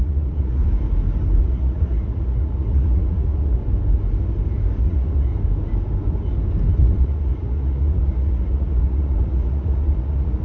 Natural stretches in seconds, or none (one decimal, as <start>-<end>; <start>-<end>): 0.6-1.4; 3.6-4.8; 5.3-6.8